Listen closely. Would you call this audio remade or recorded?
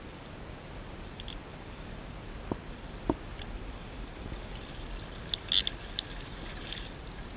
recorded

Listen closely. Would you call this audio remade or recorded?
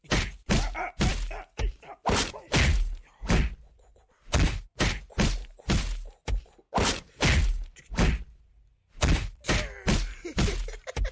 recorded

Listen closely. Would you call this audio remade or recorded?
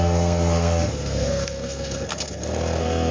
remade